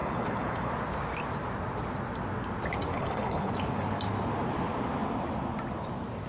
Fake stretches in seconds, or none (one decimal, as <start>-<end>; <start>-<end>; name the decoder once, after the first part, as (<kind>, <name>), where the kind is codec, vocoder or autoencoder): 0.0-0.7 (codec, HILCodec); 2.9-3.5